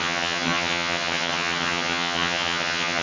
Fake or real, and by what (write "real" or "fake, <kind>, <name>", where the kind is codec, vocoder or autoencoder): fake, vocoder, HiFi-GAN